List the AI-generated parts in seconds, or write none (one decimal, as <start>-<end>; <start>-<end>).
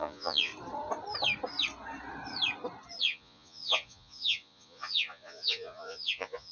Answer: 0.0-0.5; 3.0-6.5